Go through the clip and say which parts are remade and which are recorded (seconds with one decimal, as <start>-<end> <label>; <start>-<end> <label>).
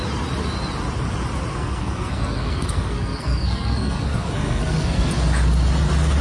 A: 0.0-1.5 recorded; 1.5-5.2 remade; 5.2-6.2 recorded